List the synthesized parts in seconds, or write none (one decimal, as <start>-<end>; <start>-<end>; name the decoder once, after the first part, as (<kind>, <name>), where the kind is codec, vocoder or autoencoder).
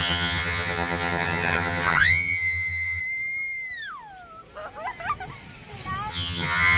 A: 0.0-3.0 (vocoder, HiFi-GAN); 6.1-6.8